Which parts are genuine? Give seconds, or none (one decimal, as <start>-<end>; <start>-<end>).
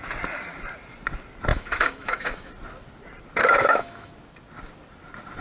0.0-1.5; 2.5-3.4; 4.1-5.4